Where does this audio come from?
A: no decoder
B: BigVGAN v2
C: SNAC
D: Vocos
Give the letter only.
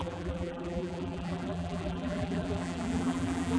B